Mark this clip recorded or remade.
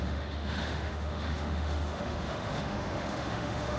remade